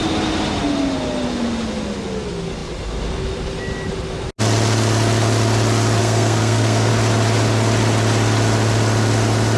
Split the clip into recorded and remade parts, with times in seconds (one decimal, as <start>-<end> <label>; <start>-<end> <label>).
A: 0.0-6.0 recorded; 6.0-6.9 remade; 6.9-9.6 recorded